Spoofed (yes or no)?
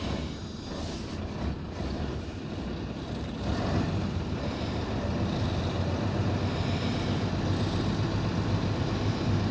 no